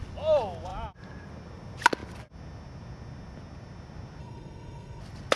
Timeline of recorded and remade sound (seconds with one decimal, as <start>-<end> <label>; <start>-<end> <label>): 0.0-4.2 recorded; 4.2-5.0 remade; 5.0-5.4 recorded